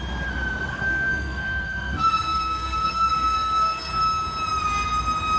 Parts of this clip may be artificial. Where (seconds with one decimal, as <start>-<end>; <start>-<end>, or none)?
0.7-3.9